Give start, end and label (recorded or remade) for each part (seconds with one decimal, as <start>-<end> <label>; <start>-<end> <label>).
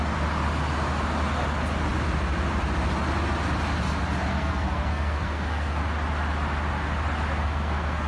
0.0-4.3 recorded; 4.3-5.8 remade; 5.8-7.4 recorded; 7.4-8.1 remade